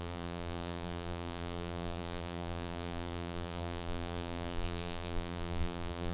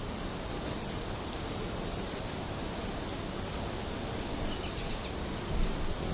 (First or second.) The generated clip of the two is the first